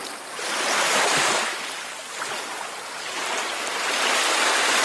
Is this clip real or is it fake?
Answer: real